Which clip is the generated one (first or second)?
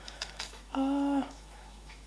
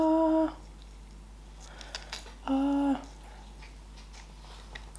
first